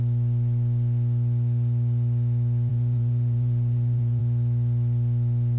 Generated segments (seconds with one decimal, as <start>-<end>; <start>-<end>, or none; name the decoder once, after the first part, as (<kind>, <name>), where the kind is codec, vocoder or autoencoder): 2.7-4.2 (vocoder, Vocos)